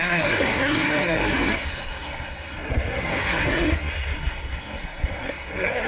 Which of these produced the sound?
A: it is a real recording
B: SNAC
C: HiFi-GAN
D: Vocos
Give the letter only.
B